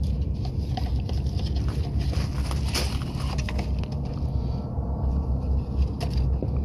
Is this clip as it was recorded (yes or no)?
yes